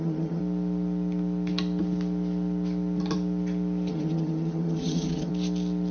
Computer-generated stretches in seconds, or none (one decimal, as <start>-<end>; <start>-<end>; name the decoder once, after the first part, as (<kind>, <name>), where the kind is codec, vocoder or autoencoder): 0.0-0.4 (vocoder, HiFi-GAN); 3.9-5.3